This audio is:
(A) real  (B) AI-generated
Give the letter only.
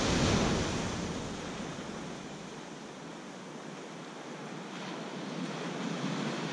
A